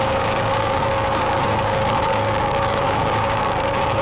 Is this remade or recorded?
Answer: remade